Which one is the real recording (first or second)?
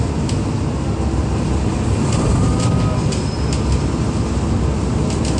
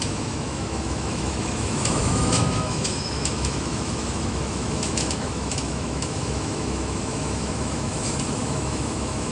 first